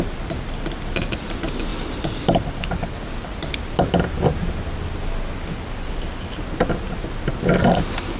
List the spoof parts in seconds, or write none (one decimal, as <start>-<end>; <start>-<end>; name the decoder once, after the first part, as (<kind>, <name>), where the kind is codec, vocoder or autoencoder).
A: none